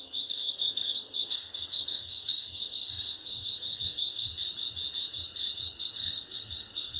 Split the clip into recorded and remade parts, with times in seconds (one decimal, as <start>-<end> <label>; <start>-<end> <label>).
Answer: 0.0-4.3 remade; 4.3-5.8 recorded; 5.8-7.0 remade